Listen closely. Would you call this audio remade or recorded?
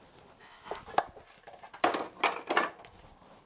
recorded